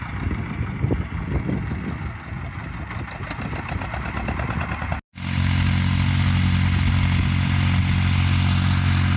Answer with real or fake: real